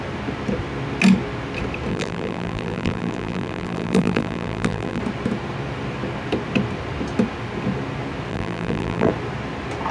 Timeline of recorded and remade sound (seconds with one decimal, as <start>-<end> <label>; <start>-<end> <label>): 0.0-1.9 recorded; 1.9-5.0 remade; 5.0-8.3 recorded; 8.3-9.1 remade; 9.1-9.9 recorded

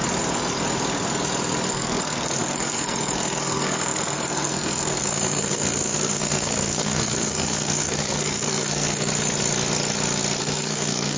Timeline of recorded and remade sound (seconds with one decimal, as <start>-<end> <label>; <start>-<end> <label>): 0.0-1.7 recorded; 1.7-9.1 remade; 9.1-10.4 recorded; 10.4-11.2 remade

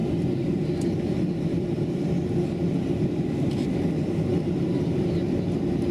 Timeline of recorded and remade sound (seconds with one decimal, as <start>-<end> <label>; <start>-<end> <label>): 0.0-5.9 recorded